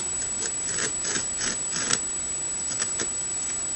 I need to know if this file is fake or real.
real